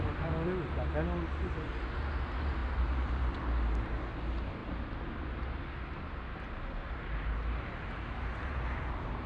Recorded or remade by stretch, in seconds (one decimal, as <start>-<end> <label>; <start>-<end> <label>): 0.0-9.3 recorded

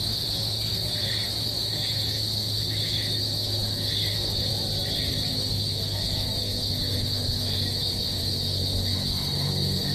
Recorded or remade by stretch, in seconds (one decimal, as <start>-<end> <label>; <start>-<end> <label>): 0.0-4.5 remade; 4.5-5.3 recorded; 5.3-9.9 remade

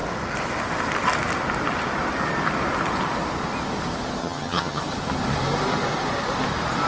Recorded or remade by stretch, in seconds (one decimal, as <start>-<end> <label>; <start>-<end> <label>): 0.0-4.2 recorded; 4.2-4.8 remade; 4.8-6.9 recorded